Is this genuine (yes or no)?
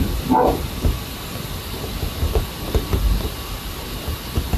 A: yes